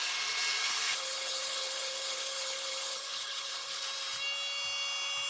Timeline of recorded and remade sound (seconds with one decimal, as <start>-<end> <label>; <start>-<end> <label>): 0.0-0.6 recorded; 0.6-3.8 remade; 3.8-5.3 recorded